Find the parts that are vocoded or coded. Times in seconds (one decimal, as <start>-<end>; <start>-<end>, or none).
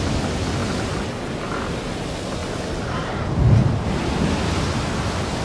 none